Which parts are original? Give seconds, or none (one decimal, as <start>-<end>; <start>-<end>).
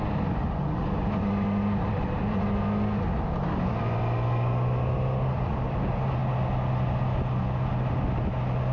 0.0-8.7